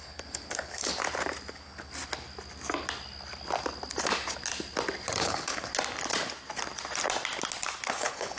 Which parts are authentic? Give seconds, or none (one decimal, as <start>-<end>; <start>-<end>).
0.9-1.5; 1.9-5.2; 5.7-7.9